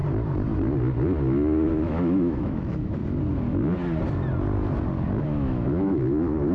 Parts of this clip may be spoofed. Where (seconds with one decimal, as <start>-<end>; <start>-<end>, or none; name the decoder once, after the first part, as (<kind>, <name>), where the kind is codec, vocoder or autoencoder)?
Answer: 1.7-3.0 (autoencoder, DAC-VAE); 5.2-6.5

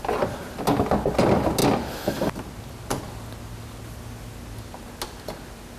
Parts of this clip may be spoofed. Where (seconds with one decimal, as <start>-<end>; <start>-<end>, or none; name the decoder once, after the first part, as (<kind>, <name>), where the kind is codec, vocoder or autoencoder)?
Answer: none

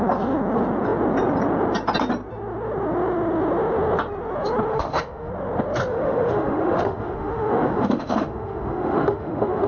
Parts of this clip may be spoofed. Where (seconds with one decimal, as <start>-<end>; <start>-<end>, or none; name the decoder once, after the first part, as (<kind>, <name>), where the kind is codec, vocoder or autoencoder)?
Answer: 4.7-5.3 (autoencoder, DAC-VAE); 5.9-9.7

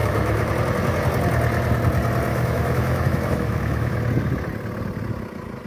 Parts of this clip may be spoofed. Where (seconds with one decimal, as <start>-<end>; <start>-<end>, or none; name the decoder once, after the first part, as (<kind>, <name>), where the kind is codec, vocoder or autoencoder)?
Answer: 0.0-0.5 (autoencoder, DAC-VAE); 2.3-4.0

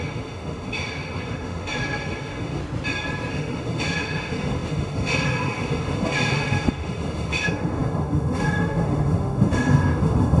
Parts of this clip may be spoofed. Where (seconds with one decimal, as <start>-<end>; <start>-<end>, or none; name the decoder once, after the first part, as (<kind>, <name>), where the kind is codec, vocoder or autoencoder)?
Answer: 0.0-2.6 (autoencoder, DAC-VAE); 3.3-10.4

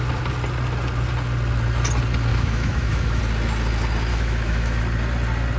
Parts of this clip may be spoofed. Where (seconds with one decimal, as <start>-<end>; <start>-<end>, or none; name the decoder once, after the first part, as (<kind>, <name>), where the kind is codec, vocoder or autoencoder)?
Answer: 2.3-3.2 (autoencoder, DAC-VAE); 4.1-4.8